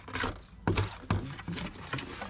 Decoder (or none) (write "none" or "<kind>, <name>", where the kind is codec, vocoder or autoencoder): none